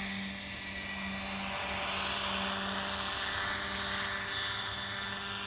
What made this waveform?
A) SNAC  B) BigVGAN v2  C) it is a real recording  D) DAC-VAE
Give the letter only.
C